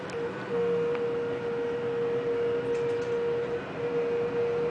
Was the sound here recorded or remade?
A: recorded